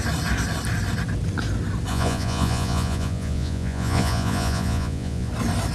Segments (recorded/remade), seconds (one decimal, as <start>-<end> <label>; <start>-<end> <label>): 0.0-1.9 recorded; 1.9-5.3 remade; 5.3-5.7 recorded